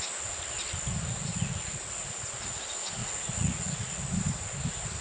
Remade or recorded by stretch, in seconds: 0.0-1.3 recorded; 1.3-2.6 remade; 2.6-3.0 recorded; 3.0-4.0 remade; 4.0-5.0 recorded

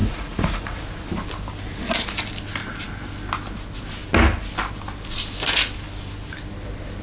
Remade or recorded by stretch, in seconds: 0.0-0.8 remade; 0.8-7.0 recorded

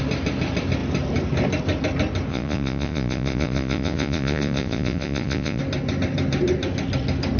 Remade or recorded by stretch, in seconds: 0.0-2.3 recorded; 2.3-5.6 remade; 5.6-7.4 recorded

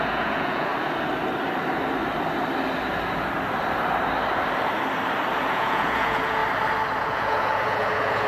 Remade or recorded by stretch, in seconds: 0.0-0.7 remade; 0.7-5.4 recorded; 5.4-6.4 remade; 6.4-7.0 recorded; 7.0-8.3 remade

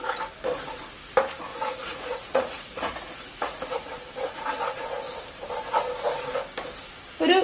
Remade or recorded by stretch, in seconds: 0.0-1.5 recorded; 1.5-5.0 remade; 5.0-7.4 recorded